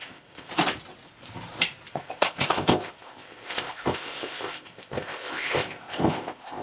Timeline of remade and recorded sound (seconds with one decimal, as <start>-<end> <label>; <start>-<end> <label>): 0.0-0.5 remade; 0.5-1.9 recorded; 1.9-6.6 remade